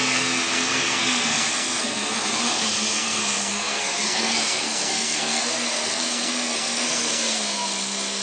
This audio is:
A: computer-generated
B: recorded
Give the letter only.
A